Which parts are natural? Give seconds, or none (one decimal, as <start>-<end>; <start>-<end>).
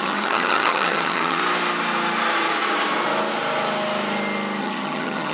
1.4-4.6